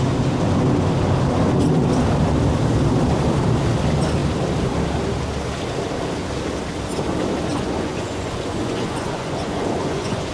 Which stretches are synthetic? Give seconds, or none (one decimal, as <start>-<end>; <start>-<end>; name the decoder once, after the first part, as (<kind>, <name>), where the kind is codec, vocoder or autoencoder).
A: 7.5-10.3 (vocoder, Vocos)